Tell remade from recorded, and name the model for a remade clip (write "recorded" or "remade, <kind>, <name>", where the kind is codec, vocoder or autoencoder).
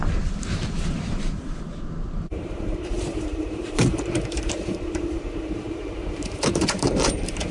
remade, vocoder, BigVGAN v2